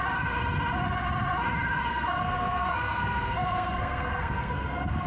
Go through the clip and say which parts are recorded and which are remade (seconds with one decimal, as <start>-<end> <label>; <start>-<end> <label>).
0.0-1.9 recorded; 1.9-5.1 remade